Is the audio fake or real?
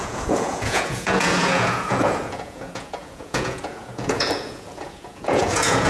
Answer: fake